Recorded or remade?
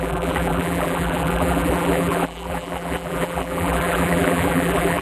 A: remade